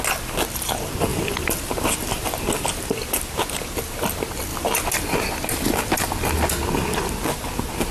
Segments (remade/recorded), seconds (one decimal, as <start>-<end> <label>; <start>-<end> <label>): 0.0-7.9 recorded